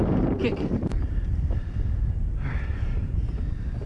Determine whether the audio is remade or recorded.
remade